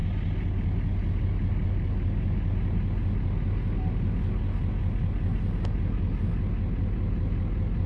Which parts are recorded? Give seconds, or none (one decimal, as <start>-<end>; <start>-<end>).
0.0-7.9